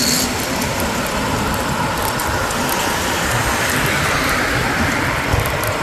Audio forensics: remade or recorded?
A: recorded